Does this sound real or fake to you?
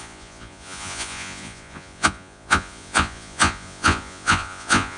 fake